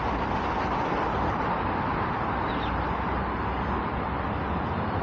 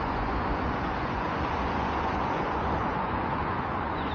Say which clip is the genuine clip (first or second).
first